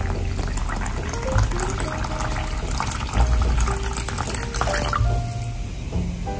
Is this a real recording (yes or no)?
yes